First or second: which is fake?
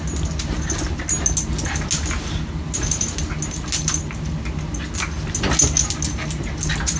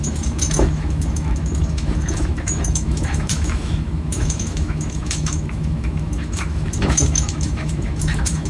second